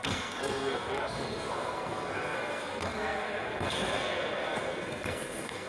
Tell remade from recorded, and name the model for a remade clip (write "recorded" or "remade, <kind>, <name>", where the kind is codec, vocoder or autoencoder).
remade, codec, SNAC